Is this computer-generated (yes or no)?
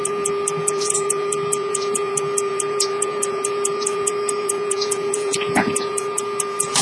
yes